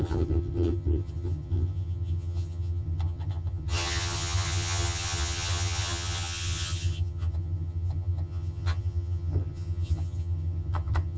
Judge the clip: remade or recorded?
remade